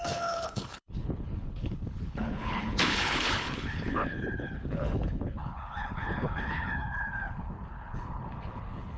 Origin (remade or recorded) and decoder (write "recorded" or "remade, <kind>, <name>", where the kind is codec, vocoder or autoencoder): remade, codec, HILCodec